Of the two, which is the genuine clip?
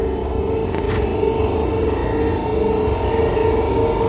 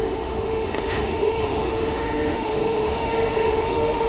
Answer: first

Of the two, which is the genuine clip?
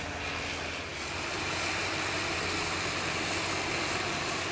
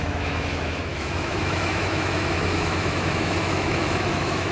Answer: first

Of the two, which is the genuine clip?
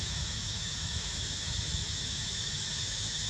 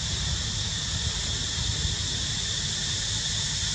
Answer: second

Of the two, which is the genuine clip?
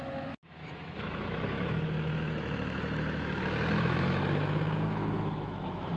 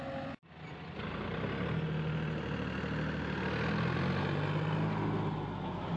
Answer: second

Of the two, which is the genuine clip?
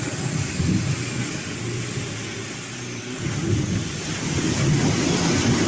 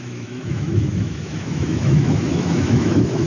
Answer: first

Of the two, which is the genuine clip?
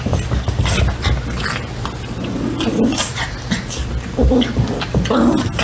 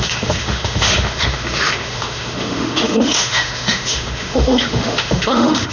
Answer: first